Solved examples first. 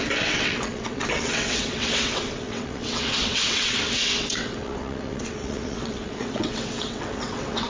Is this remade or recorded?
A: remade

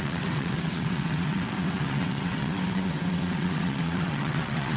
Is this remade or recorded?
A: remade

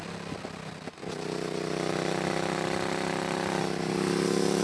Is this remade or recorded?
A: recorded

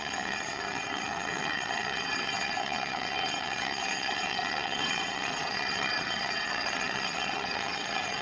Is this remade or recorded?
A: remade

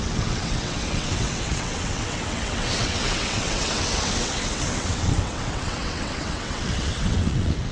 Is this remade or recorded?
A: remade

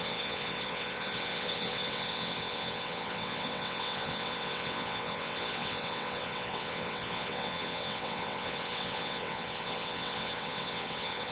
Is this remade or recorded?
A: remade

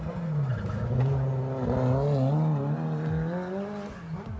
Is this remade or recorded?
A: recorded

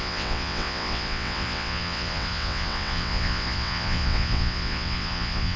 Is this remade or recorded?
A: remade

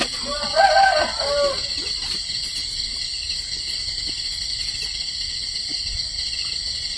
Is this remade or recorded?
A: recorded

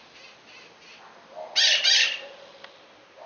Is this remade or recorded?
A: recorded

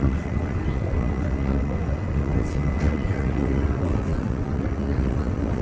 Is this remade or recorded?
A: remade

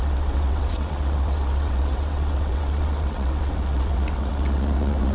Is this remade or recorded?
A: remade